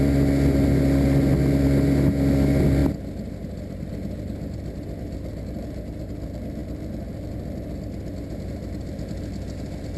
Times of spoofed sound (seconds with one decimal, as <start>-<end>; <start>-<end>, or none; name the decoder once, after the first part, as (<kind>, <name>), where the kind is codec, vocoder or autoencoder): none